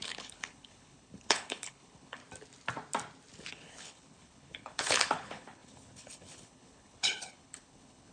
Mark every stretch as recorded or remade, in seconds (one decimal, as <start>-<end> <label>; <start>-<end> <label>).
0.0-2.2 remade; 2.2-3.5 recorded; 3.5-8.1 remade